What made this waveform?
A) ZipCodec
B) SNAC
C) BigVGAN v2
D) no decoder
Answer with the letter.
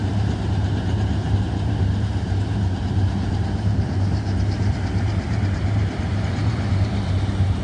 C